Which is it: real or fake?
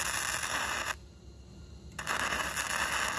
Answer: real